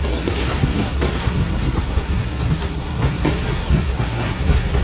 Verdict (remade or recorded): remade